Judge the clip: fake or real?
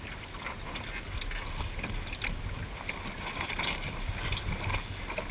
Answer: real